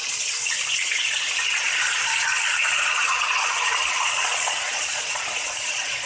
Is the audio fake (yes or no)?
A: yes